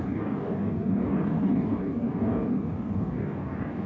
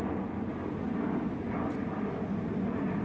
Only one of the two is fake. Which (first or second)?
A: first